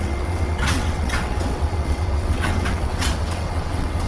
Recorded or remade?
remade